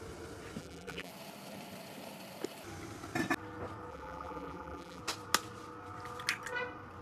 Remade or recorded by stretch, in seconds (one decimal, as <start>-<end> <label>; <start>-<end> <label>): 0.0-0.6 recorded; 0.6-1.1 remade; 1.1-3.9 recorded; 3.9-5.0 remade; 5.0-7.0 recorded

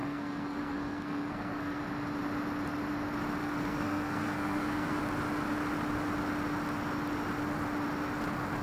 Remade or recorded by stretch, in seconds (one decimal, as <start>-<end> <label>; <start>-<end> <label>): 0.0-1.8 remade; 1.8-3.4 recorded; 3.4-5.0 remade; 5.0-8.6 recorded

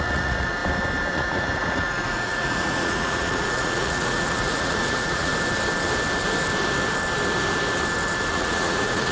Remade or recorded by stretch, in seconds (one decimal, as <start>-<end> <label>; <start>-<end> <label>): 0.0-0.6 remade; 0.6-1.1 recorded; 1.1-5.3 remade; 5.3-8.3 recorded; 8.3-9.1 remade